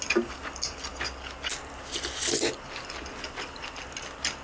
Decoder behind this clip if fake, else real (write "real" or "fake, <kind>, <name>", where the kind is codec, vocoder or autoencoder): real